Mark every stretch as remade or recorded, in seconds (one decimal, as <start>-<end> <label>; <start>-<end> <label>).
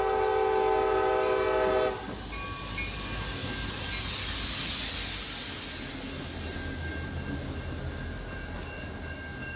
0.0-9.6 recorded